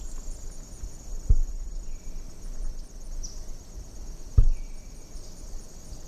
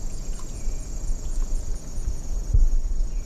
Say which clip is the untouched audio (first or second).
first